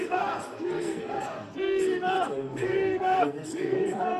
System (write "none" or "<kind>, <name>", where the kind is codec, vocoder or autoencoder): codec, SNAC